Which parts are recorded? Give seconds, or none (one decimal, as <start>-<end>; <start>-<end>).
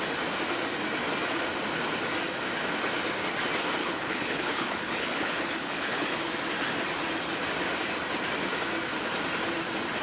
0.0-3.8; 6.3-10.0